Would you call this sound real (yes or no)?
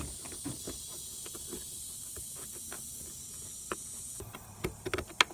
yes